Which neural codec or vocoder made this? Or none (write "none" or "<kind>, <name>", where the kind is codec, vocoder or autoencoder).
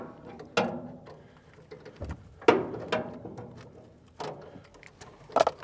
none